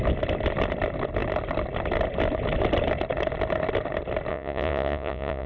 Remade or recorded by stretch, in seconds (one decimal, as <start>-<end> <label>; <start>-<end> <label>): 0.0-4.3 recorded; 4.3-5.5 remade